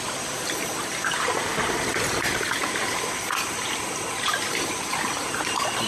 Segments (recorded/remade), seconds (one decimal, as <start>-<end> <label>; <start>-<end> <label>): 0.0-5.9 recorded